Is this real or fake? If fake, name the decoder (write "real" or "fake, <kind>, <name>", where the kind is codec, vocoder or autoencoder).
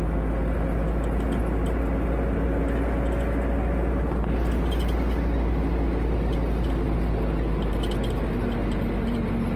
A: real